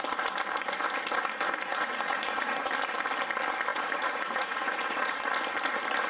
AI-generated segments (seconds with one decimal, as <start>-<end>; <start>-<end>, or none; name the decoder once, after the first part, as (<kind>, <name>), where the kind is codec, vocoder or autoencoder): 1.7-2.7 (vocoder, Vocos); 3.7-5.2